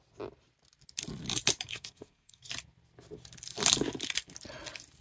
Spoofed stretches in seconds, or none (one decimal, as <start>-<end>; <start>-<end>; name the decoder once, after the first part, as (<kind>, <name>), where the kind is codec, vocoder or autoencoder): 1.7-2.5 (codec, SNAC)